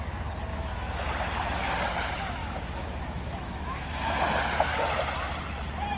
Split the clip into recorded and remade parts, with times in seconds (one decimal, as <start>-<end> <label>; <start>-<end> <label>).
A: 0.0-0.5 recorded; 0.5-1.1 remade; 1.1-2.4 recorded; 2.4-4.2 remade; 4.2-6.0 recorded